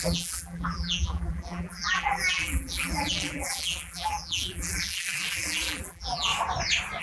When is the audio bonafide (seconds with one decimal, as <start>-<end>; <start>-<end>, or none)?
6.3-7.0